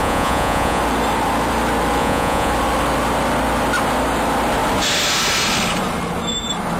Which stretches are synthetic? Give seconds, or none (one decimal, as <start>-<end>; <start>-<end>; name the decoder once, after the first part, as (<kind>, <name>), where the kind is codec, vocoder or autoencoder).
0.0-0.8 (vocoder, Vocos); 2.0-2.5